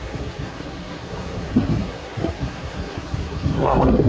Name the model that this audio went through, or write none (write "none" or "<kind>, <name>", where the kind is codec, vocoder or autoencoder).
codec, SNAC